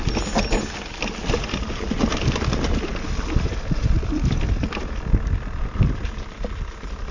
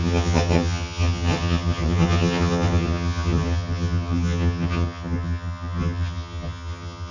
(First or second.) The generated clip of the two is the second